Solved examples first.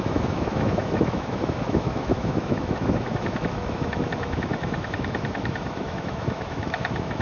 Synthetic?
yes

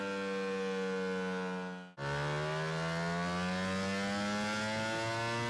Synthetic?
no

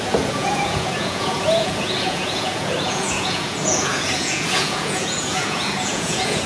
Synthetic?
yes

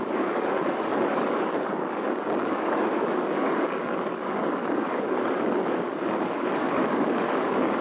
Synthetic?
yes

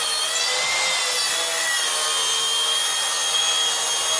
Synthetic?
no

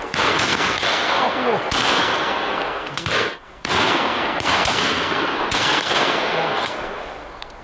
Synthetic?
yes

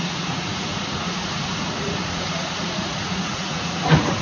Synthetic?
yes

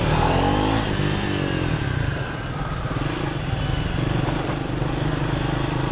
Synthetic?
no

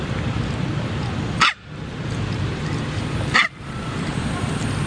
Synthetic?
no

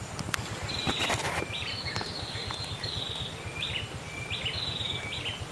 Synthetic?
no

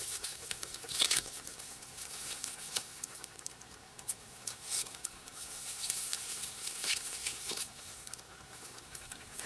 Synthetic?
yes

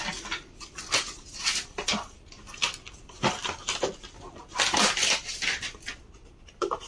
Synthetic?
no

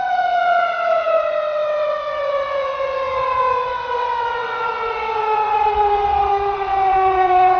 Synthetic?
yes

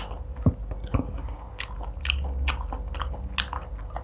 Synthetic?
no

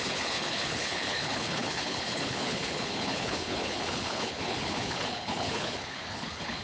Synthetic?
yes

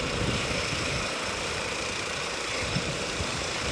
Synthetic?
yes